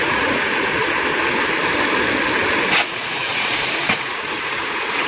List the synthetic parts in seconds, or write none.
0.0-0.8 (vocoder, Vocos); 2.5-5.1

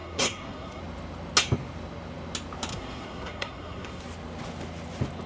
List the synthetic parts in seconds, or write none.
0.0-0.8 (codec, SNAC); 2.7-4.0

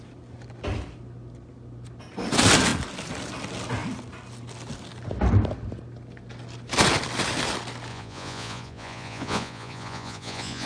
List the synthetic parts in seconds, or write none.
7.9-10.7 (vocoder, Vocos)

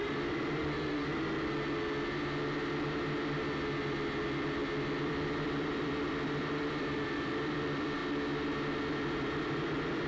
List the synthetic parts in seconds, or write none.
0.0-0.6 (vocoder, BigVGAN v2); 5.0-8.0; 9.1-10.1

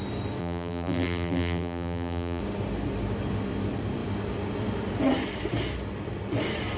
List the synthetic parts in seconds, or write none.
0.4-2.4 (vocoder, BigVGAN v2)